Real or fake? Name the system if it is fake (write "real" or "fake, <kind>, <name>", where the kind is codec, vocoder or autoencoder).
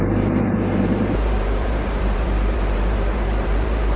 fake, vocoder, BigVGAN v2